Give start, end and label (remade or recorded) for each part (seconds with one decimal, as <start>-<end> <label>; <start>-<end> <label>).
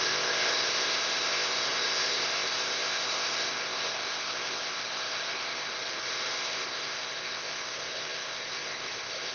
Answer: 0.0-5.7 remade; 5.7-6.4 recorded; 6.4-9.3 remade